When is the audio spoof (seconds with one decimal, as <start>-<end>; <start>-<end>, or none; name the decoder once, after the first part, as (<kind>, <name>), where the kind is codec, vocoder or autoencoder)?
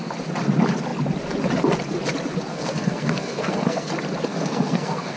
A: 2.5-3.9 (codec, SNAC); 4.3-5.2